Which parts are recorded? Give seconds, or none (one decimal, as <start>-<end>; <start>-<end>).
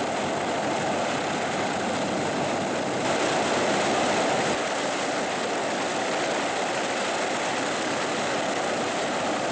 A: 0.0-9.5